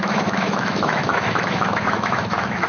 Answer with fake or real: fake